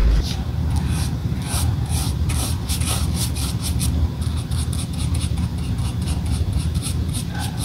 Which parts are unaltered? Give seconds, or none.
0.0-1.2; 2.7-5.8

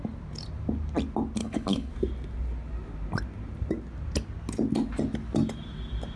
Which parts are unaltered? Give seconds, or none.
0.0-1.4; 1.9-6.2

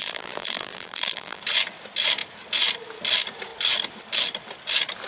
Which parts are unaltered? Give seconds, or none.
1.4-5.1

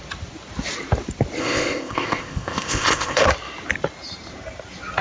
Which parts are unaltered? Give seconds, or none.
0.0-1.4; 3.3-5.0

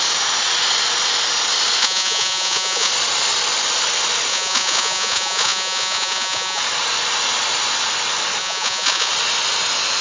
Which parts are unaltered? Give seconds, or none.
0.0-1.8; 2.9-4.3; 6.6-8.4; 9.1-10.0

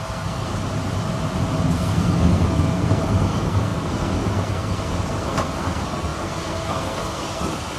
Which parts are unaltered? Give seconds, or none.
0.5-1.6